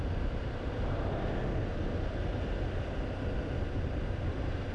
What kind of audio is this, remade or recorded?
recorded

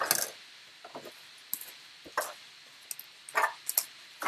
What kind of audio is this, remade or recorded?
recorded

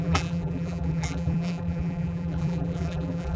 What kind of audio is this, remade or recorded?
remade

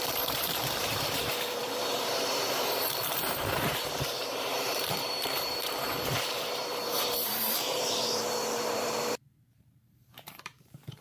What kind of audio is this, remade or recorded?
remade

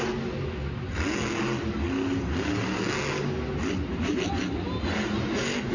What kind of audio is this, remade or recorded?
recorded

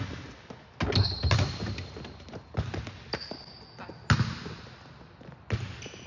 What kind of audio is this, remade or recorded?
recorded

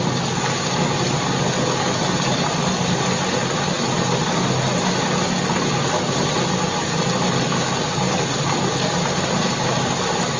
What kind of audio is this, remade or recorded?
recorded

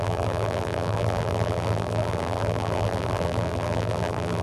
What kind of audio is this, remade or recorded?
remade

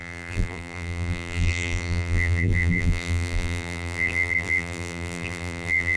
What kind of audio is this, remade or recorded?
remade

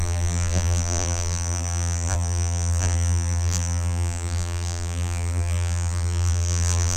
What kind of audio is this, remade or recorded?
remade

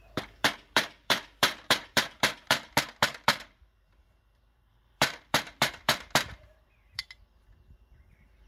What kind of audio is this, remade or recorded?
remade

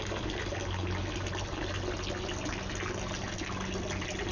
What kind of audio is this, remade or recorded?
recorded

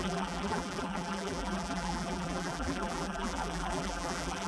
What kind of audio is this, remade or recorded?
remade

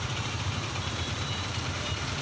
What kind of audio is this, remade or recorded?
remade